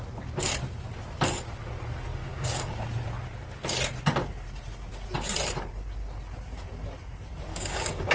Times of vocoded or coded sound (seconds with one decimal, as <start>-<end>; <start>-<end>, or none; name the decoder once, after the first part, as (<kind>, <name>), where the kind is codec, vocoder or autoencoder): 2.1-2.8 (codec, DAC); 7.5-8.1